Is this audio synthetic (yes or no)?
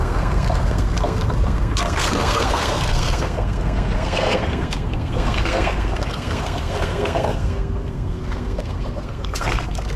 yes